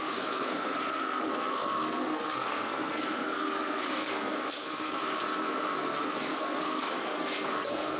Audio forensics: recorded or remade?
remade